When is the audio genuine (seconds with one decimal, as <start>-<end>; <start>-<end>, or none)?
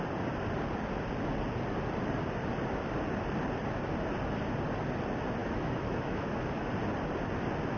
0.0-5.4; 6.7-7.8